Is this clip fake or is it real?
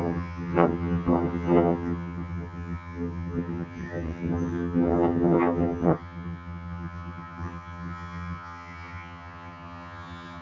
fake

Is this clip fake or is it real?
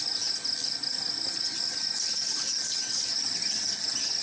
real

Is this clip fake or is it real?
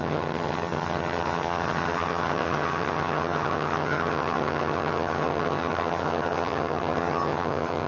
fake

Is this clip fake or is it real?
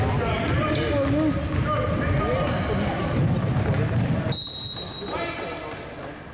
real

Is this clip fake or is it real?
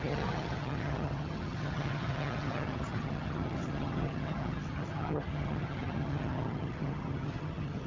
fake